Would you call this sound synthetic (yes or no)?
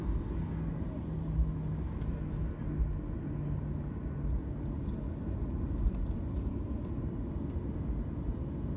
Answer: no